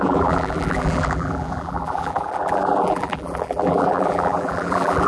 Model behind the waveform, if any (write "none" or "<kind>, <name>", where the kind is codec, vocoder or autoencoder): vocoder, BigVGAN v2